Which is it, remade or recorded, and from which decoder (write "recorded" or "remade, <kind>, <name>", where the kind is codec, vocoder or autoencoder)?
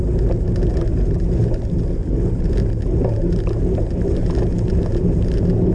recorded